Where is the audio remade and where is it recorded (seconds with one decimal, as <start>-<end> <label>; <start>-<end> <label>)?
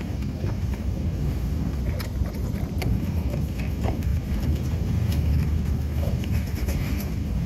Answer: 0.0-1.8 remade; 1.8-2.8 recorded; 2.8-7.5 remade